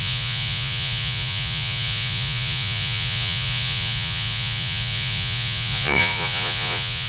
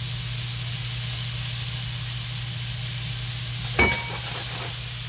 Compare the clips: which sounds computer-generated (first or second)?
first